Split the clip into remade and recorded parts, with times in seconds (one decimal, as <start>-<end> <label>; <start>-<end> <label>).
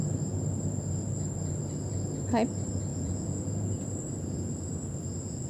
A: 0.0-2.9 recorded; 2.9-3.8 remade; 3.8-5.5 recorded